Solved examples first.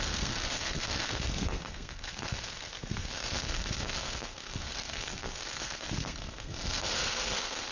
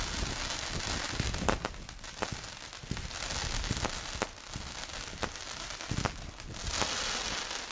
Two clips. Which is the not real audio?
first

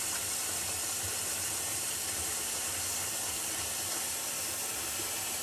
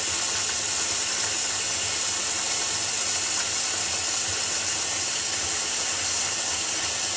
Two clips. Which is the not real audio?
first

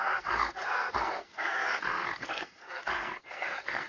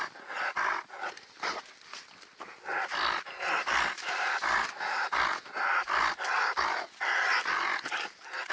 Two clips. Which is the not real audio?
first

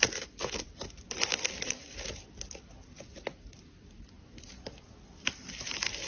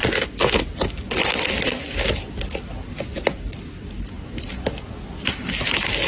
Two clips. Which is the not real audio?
first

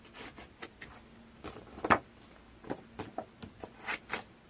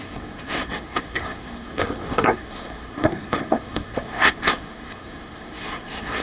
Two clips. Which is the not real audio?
second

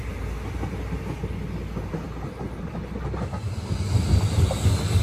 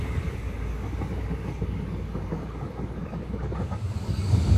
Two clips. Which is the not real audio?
second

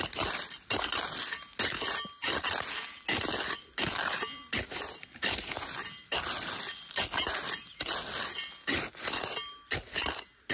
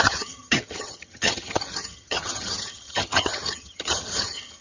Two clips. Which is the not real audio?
second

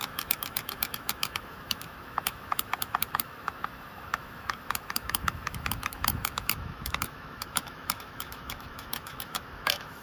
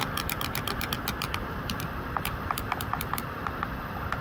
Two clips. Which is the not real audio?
first